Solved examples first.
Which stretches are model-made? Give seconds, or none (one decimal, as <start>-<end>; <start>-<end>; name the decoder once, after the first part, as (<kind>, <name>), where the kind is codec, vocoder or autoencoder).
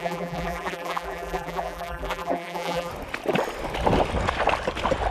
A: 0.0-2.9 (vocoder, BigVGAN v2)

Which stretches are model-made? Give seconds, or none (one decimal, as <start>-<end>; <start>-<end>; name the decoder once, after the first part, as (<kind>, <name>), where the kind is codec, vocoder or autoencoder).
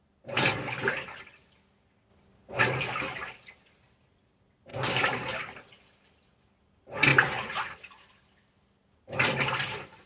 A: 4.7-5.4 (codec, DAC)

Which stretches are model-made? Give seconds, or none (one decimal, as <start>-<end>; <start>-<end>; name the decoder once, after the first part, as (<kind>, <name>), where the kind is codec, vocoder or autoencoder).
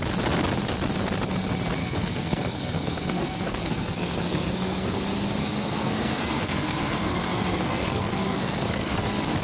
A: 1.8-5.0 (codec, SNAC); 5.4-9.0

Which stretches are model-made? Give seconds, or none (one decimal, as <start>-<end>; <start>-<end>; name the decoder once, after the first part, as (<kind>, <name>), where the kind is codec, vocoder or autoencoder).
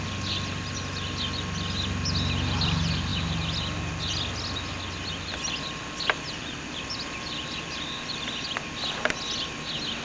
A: none